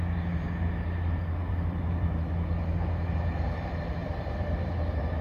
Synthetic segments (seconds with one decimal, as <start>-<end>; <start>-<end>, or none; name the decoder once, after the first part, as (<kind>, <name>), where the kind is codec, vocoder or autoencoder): 1.4-2.2 (vocoder, BigVGAN v2); 4.0-4.7